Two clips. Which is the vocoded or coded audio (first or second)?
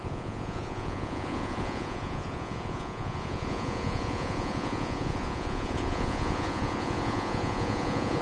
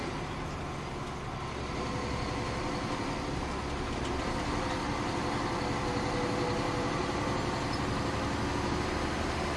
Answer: first